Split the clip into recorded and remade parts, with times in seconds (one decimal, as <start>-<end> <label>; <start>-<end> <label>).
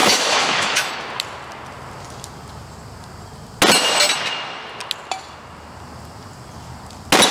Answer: 0.0-0.9 remade; 0.9-7.3 recorded